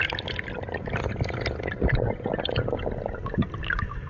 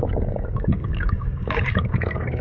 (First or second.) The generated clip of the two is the second